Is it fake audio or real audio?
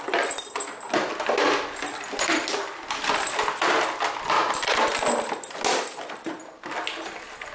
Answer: real